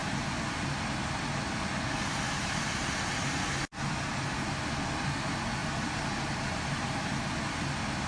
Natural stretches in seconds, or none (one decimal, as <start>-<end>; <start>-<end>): 0.0-8.1